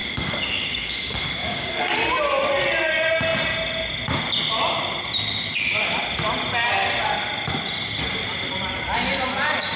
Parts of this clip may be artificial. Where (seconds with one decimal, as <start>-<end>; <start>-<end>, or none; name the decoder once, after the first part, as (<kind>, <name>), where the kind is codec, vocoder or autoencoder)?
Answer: 0.0-1.8 (codec, DAC)